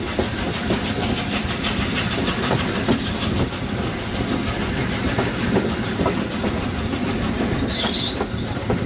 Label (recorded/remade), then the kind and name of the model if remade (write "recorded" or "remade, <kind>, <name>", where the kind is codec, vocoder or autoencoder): recorded